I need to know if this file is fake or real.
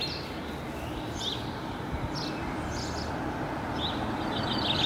real